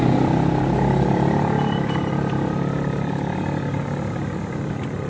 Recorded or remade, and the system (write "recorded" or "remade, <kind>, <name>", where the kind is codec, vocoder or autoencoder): recorded